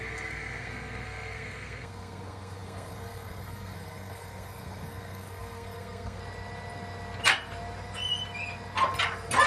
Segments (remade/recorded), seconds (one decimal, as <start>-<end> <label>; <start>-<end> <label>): 0.0-6.2 remade; 6.2-9.5 recorded